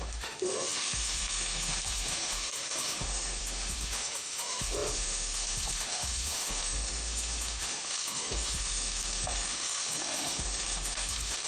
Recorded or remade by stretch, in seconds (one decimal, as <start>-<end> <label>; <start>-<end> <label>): 0.0-11.5 remade